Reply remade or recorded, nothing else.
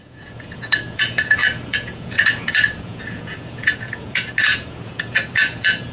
remade